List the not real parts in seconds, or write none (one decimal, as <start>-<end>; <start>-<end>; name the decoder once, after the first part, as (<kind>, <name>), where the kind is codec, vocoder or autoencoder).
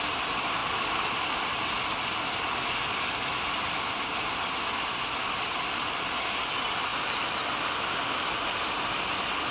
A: none